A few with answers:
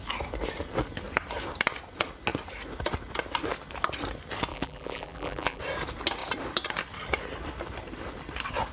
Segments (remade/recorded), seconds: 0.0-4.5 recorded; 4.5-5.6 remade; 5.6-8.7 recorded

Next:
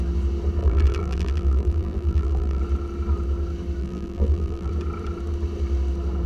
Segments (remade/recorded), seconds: 0.0-0.6 recorded; 0.6-2.6 remade; 2.6-3.8 recorded; 3.8-4.7 remade; 4.7-6.3 recorded

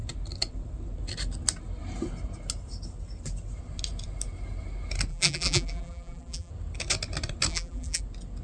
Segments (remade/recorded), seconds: 0.0-5.1 recorded; 5.1-6.5 remade; 6.5-7.5 recorded; 7.5-8.0 remade; 8.0-8.4 recorded

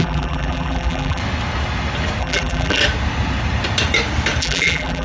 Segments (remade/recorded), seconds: 0.0-1.2 remade; 1.2-2.2 recorded; 2.2-2.8 remade; 2.8-4.4 recorded; 4.4-5.0 remade